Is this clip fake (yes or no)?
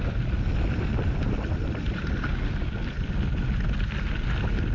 no